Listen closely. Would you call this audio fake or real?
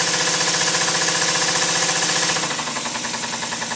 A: real